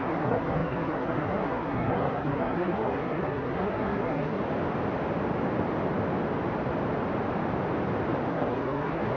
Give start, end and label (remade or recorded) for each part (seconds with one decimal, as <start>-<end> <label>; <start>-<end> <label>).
0.0-4.4 remade; 4.4-8.3 recorded; 8.3-9.2 remade